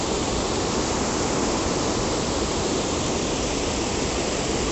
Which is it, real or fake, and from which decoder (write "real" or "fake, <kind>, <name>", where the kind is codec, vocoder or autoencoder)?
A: real